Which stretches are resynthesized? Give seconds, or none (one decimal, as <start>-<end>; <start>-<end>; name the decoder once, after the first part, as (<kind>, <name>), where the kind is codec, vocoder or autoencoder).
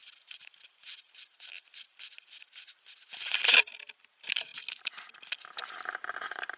none